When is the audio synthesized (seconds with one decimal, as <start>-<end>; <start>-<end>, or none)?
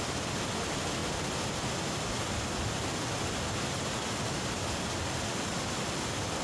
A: none